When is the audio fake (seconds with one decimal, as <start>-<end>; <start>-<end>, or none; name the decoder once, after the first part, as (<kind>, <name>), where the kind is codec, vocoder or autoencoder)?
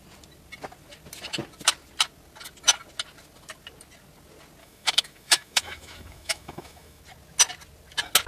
4.6-7.0 (autoencoder, DAC-VAE)